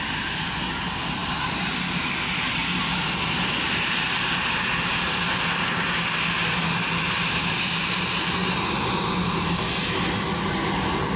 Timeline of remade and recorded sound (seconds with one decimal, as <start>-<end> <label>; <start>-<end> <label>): 0.0-11.2 recorded